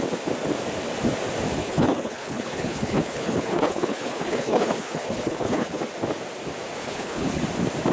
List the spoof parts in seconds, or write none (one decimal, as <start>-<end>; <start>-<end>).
1.6-5.8; 6.8-7.4